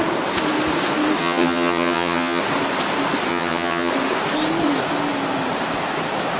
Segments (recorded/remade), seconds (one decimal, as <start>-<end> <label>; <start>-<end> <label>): 0.0-1.2 recorded; 1.2-2.4 remade; 2.4-3.3 recorded; 3.3-3.9 remade; 3.9-6.4 recorded